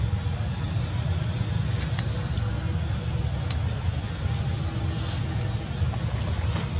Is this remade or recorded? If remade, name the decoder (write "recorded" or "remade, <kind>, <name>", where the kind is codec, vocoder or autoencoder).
recorded